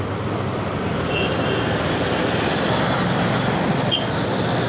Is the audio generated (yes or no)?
no